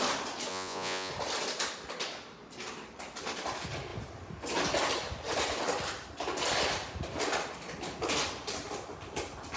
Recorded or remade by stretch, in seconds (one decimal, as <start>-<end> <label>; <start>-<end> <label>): 0.0-0.5 recorded; 0.5-1.1 remade; 1.1-9.6 recorded